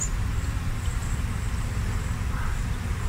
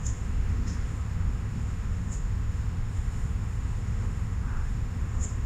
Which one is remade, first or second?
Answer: second